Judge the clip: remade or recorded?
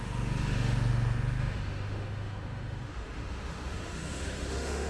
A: remade